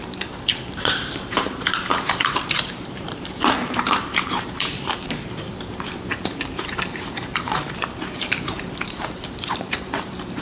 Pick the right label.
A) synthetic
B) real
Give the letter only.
A